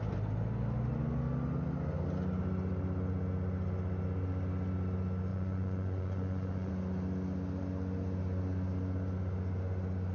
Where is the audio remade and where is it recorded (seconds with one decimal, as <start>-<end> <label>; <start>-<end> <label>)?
0.0-5.3 recorded; 5.3-6.7 remade; 6.7-10.1 recorded